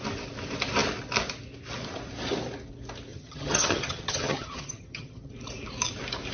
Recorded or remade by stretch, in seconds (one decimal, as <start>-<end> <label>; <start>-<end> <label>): 0.0-3.1 recorded; 3.1-5.3 remade; 5.3-6.3 recorded

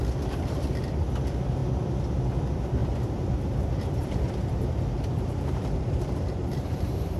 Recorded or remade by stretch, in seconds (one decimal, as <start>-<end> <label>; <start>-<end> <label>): 0.0-2.8 recorded; 2.8-7.2 remade

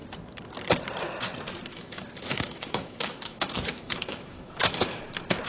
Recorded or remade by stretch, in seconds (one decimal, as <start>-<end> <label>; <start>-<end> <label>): 0.0-1.7 recorded; 1.7-5.0 remade; 5.0-5.5 recorded

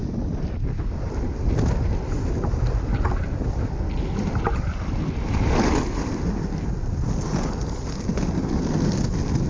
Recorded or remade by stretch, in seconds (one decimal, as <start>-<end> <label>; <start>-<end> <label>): 0.0-9.5 recorded

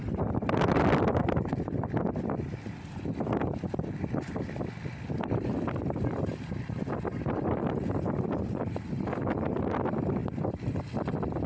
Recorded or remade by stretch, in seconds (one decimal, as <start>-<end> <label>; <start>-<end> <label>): 0.0-10.2 remade; 10.2-11.5 recorded

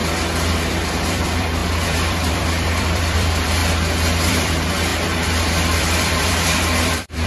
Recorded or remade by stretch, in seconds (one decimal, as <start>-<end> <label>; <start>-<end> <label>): 0.0-0.7 recorded; 0.7-3.6 remade; 3.6-4.3 recorded; 4.3-7.3 remade

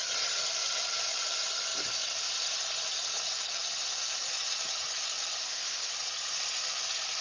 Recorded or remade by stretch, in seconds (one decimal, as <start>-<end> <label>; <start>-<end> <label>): 0.0-5.4 recorded; 5.4-5.9 remade; 5.9-7.2 recorded

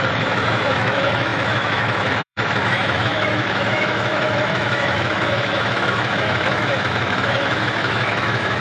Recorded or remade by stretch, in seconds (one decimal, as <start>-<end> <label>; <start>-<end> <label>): 0.0-8.6 remade